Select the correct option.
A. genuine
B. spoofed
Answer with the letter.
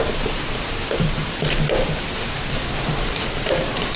B